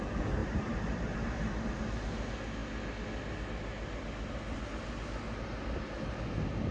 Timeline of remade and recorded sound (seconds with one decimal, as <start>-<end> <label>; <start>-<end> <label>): 0.0-0.4 recorded; 0.4-1.8 remade; 1.8-6.7 recorded